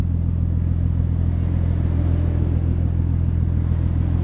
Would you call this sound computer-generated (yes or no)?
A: no